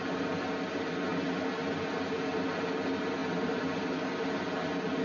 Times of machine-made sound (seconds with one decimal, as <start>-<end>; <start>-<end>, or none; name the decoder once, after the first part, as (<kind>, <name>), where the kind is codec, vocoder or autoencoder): none